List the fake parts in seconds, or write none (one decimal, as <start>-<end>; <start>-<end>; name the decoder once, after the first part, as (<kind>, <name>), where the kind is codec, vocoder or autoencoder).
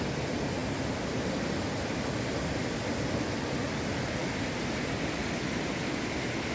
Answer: 0.6-3.1 (vocoder, BigVGAN v2); 4.2-5.2